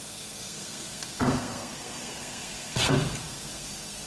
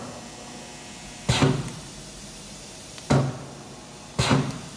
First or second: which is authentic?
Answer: second